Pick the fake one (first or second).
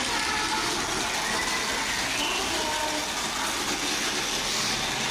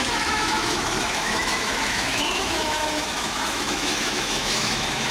second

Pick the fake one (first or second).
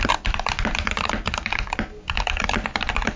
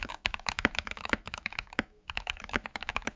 second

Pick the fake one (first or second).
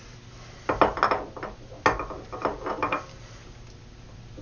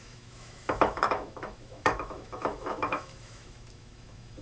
second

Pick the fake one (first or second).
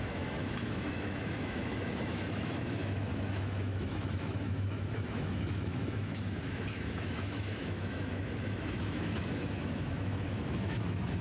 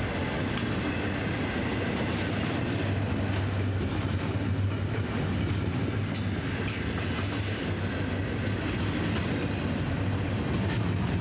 first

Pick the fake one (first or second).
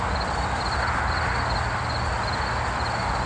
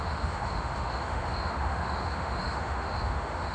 second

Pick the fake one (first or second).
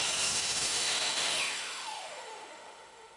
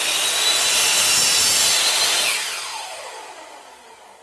first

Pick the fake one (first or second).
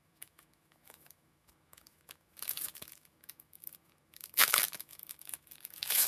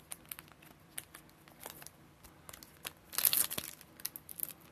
first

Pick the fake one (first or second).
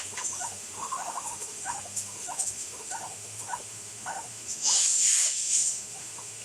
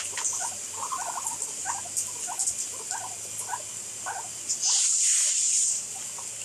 first